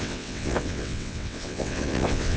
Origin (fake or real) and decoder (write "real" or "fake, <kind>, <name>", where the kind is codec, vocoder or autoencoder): fake, vocoder, WaveNeXt